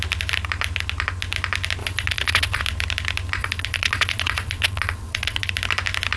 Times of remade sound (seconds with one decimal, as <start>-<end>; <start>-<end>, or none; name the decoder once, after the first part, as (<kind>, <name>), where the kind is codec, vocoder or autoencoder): 1.8-2.6 (vocoder, Vocos); 3.4-5.5